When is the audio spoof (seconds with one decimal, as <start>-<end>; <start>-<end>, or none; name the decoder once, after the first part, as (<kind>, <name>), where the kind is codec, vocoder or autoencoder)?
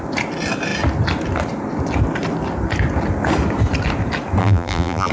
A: 4.4-5.1 (vocoder, BigVGAN v2)